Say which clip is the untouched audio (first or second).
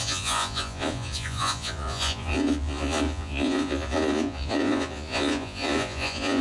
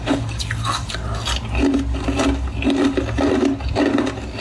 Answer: second